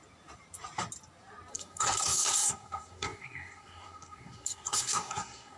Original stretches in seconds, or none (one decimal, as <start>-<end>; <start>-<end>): 0.0-1.5